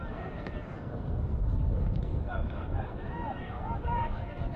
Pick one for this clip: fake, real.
fake